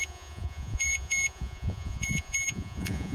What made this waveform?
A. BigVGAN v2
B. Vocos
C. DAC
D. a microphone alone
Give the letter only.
B